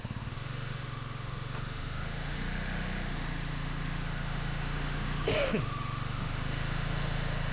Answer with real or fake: fake